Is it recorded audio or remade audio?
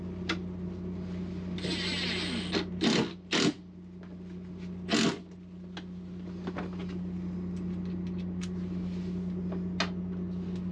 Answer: recorded